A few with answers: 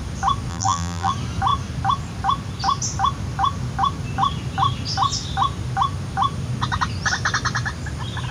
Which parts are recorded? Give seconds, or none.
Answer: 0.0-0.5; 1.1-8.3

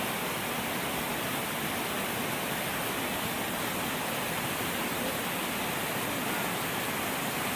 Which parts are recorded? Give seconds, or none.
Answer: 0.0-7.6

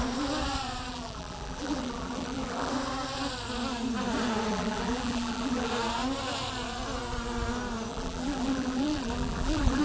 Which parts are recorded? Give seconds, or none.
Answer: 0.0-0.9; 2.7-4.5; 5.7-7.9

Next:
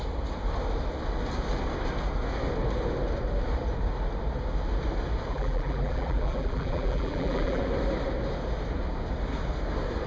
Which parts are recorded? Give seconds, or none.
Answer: 0.0-5.3; 7.6-10.1

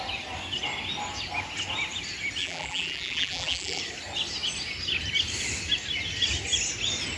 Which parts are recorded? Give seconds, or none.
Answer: 0.0-2.4; 3.8-7.2